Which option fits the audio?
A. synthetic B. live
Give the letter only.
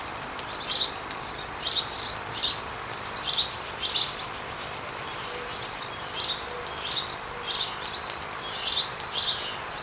B